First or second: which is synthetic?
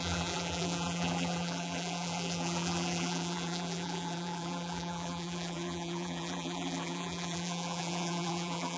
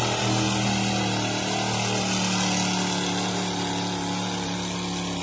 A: first